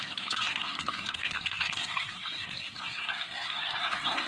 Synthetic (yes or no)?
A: yes